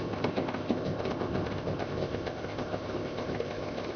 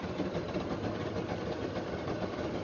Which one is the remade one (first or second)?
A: first